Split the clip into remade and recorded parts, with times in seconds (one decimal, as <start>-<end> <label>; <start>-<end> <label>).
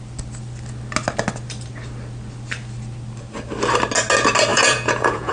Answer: 0.0-4.5 recorded; 4.5-5.3 remade